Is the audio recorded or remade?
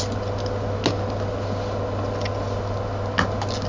recorded